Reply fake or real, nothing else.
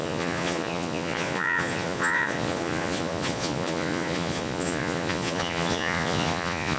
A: fake